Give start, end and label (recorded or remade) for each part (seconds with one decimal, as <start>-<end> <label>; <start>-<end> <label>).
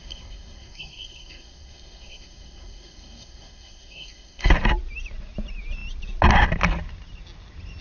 0.0-4.5 remade; 4.5-7.8 recorded